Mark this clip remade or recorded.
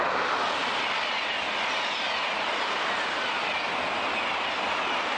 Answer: recorded